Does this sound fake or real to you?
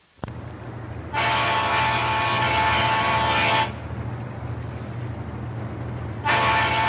real